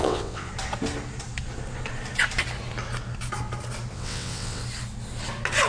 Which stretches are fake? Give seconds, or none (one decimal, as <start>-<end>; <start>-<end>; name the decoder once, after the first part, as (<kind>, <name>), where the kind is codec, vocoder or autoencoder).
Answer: 0.0-0.5 (vocoder, WaveNeXt); 3.9-4.6